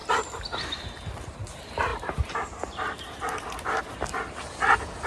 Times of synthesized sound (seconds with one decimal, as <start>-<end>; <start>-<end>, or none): 0.0-0.9; 1.9-3.8